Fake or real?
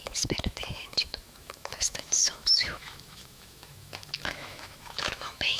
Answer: fake